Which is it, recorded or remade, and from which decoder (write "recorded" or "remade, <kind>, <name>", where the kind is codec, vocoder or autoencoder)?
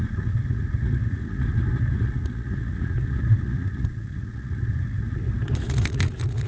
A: remade, vocoder, Vocos